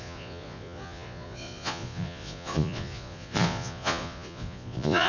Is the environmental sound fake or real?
fake